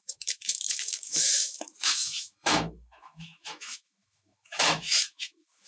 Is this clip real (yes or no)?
no